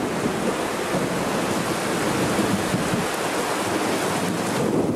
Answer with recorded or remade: recorded